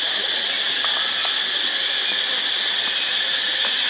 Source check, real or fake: real